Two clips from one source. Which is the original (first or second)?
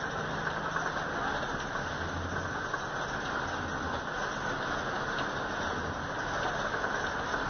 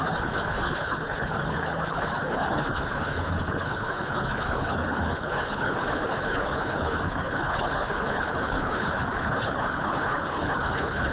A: first